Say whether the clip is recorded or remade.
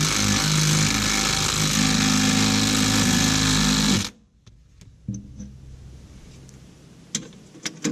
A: recorded